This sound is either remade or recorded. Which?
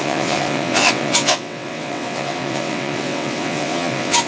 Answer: remade